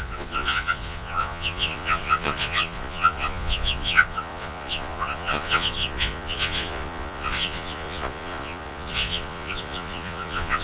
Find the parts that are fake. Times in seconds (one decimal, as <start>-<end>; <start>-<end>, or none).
0.0-10.6